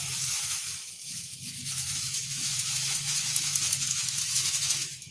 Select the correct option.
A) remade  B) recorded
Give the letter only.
A